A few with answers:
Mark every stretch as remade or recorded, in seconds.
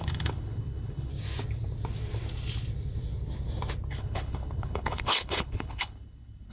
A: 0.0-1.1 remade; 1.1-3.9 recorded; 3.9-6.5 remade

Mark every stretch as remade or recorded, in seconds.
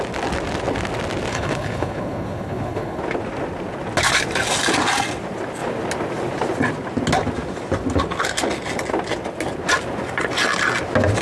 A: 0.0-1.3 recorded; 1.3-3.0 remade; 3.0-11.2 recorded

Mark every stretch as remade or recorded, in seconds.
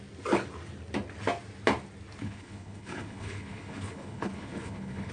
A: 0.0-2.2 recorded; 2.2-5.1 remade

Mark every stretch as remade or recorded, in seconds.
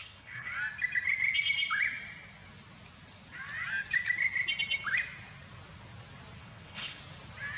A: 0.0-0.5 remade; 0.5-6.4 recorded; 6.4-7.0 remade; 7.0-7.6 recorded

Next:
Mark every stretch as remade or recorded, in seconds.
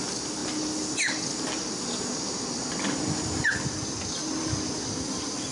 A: 0.0-5.5 recorded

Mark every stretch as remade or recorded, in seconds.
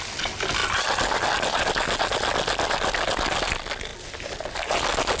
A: 0.0-5.2 recorded